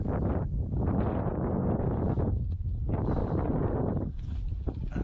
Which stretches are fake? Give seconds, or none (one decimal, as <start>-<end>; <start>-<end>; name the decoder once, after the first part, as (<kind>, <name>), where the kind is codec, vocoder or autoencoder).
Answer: 3.2-4.0 (vocoder, BigVGAN v2)